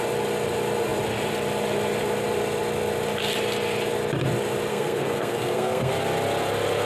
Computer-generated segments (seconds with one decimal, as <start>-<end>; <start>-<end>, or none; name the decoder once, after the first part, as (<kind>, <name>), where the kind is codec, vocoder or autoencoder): 4.7-5.9 (codec, SNAC)